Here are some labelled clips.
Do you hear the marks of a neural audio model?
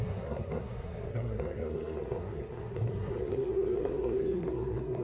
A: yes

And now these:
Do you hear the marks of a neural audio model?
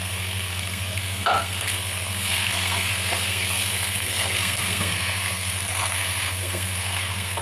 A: yes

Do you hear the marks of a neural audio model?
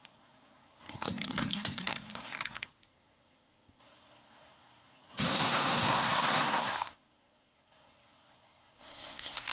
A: yes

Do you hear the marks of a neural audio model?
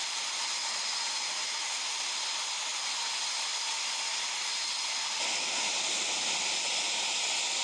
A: no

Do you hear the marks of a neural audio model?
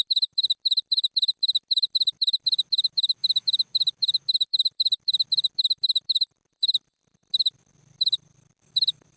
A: no